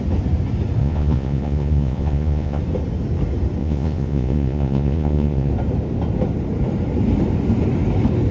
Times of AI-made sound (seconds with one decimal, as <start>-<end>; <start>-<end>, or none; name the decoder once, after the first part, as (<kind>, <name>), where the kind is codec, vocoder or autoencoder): 0.8-2.6 (vocoder, Vocos); 3.6-5.5